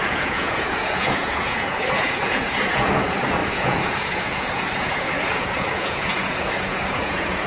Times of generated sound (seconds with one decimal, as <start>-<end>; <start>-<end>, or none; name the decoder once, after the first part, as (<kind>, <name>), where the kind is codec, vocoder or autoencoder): 0.0-7.5 (vocoder, Vocos)